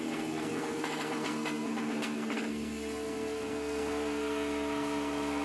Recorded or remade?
remade